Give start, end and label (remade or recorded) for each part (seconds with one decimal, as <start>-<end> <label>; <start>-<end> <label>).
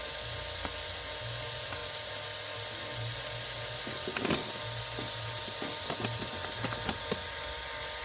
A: 0.0-8.0 recorded